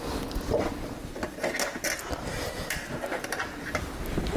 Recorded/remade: recorded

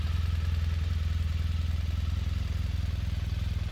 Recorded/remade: recorded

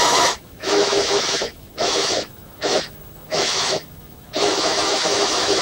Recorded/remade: remade